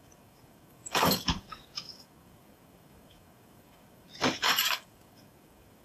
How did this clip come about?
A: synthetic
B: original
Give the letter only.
A